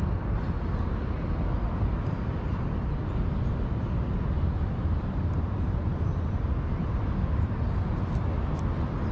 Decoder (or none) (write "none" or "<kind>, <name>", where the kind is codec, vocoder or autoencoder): none